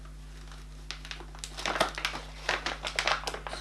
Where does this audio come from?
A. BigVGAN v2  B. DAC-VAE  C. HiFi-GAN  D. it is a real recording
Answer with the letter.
D